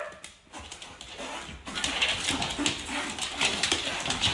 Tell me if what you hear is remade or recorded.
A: recorded